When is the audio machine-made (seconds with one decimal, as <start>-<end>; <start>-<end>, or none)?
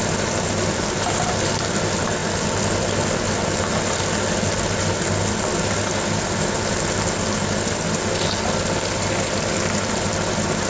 none